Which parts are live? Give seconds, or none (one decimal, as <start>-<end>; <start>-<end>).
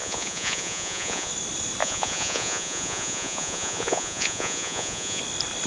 1.3-1.8; 5.2-5.7